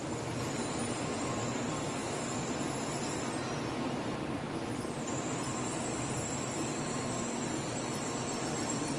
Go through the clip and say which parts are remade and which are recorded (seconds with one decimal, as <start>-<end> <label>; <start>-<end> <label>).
0.0-0.6 recorded; 0.6-1.4 remade; 1.4-2.0 recorded; 2.0-7.1 remade; 7.1-9.0 recorded